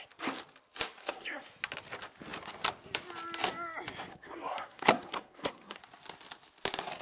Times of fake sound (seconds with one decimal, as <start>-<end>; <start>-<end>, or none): 1.0-1.5; 4.1-5.8